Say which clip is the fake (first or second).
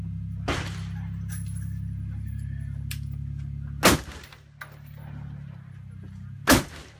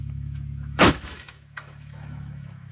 second